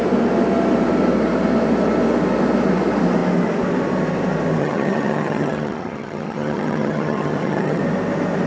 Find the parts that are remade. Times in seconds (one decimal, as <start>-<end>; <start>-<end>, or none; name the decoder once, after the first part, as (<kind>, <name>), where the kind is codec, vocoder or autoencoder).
4.6-7.8 (vocoder, HiFi-GAN)